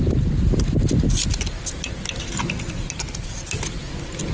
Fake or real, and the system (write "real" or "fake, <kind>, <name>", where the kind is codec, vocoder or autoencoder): real